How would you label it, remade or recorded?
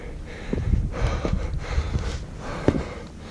recorded